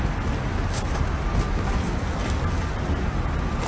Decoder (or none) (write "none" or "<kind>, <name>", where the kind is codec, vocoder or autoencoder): none